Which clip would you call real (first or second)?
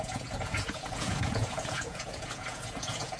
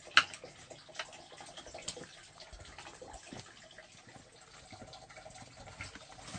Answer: second